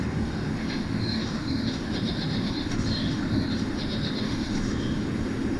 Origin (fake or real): fake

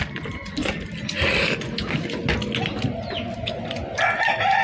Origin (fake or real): real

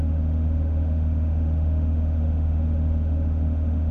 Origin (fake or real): fake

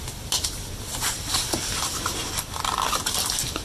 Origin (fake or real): real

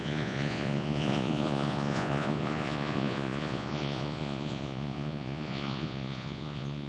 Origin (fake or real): fake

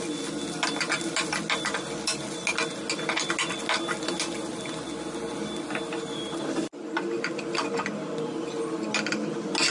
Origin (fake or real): real